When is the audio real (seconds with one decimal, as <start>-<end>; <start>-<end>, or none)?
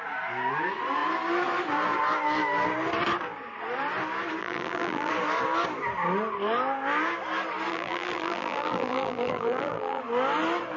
0.0-4.4; 5.1-7.7; 10.0-10.8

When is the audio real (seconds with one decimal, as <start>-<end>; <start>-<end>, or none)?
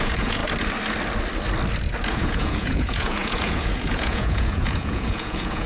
0.4-2.1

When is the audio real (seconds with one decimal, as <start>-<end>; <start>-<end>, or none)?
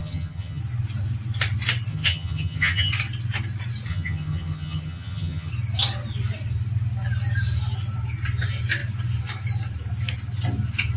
0.6-1.9; 2.9-3.9; 5.5-11.0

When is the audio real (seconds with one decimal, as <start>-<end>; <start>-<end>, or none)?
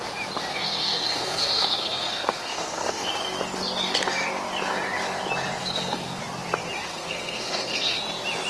0.0-0.5; 3.1-5.6; 6.2-6.9; 8.0-8.5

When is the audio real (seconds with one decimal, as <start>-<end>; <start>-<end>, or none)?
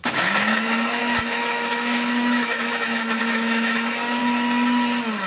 4.2-5.3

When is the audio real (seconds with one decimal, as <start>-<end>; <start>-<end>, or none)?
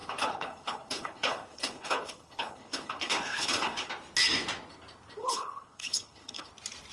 3.9-5.2; 6.5-6.9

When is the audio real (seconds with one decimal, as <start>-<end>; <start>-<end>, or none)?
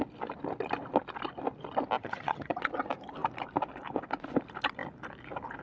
0.0-2.0; 2.6-5.6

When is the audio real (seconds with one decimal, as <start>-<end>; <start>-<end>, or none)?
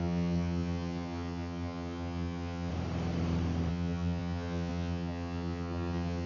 2.7-3.7